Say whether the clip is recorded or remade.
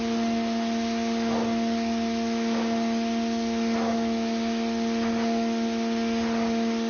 recorded